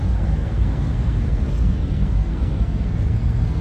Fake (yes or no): yes